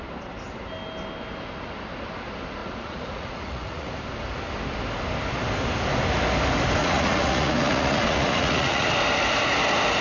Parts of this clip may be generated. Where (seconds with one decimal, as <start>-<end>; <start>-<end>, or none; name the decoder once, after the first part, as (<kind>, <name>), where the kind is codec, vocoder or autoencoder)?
2.6-3.9 (vocoder, Vocos); 6.8-8.9